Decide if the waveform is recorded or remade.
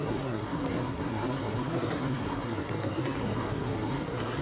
remade